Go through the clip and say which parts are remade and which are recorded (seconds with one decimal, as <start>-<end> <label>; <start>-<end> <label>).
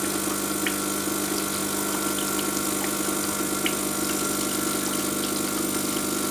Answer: 0.0-6.3 recorded